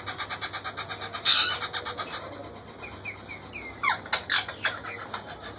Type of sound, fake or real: real